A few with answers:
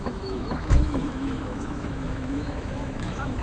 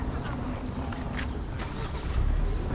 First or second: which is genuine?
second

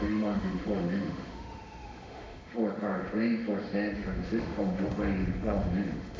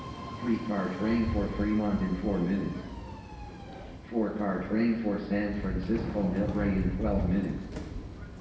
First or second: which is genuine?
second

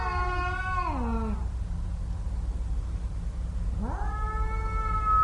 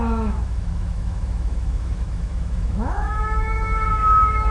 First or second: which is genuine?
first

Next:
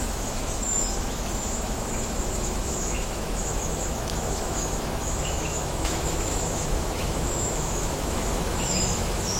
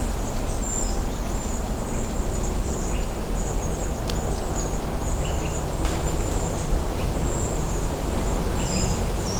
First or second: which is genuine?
second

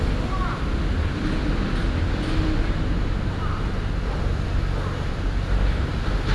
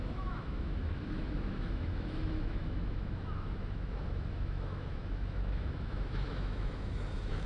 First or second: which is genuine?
first